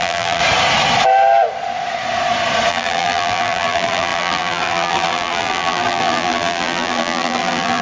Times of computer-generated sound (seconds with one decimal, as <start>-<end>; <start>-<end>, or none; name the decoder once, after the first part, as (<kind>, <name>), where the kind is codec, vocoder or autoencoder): 0.0-0.4 (vocoder, BigVGAN v2); 2.7-7.8